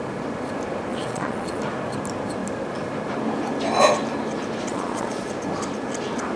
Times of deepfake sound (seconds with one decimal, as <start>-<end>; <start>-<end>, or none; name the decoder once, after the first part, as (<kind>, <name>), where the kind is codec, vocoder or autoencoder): 0.9-1.6 (vocoder, Vocos); 4.7-5.3